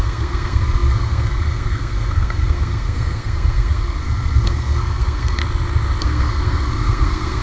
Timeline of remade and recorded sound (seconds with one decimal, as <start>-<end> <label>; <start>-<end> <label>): 0.0-5.4 remade; 5.4-6.0 recorded; 6.0-7.4 remade